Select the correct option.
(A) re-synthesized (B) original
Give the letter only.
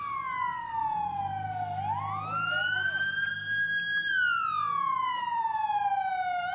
B